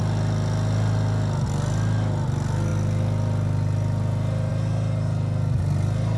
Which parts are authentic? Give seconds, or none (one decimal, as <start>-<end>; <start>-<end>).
0.0-6.2